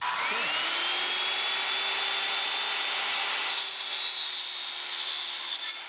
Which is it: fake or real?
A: real